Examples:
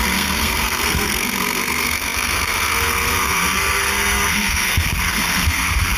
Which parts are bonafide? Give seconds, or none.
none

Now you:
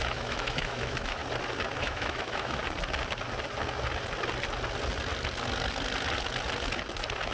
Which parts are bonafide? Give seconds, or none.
1.2-1.8; 2.6-7.3

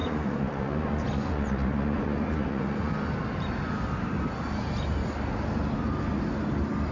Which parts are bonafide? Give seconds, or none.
2.9-6.9

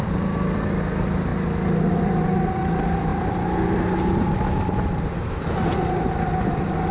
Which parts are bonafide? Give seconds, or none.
1.3-2.0; 3.1-6.5

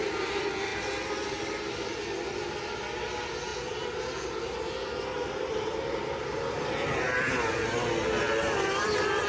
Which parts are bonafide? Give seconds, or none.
3.5-4.9

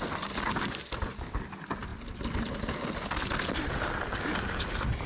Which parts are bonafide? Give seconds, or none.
0.0-5.1

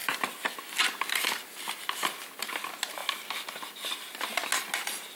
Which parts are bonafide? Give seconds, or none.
0.0-5.2